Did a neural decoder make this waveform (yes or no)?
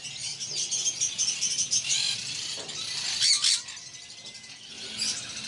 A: no